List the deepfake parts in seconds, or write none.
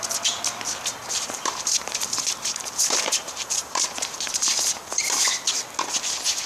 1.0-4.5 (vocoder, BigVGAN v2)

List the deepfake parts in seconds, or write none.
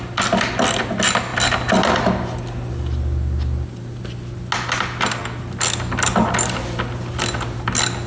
none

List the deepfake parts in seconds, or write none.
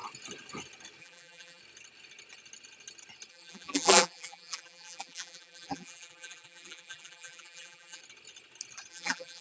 1.0-1.6 (vocoder, BigVGAN v2); 3.3-8.0; 8.9-9.4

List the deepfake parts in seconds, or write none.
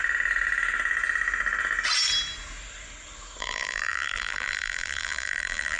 3.4-5.8 (vocoder, BigVGAN v2)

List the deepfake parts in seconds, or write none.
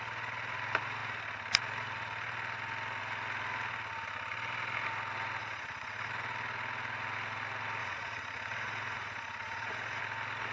5.4-6.1 (vocoder, Vocos); 7.8-10.0